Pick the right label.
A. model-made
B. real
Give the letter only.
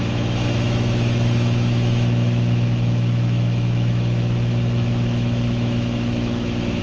A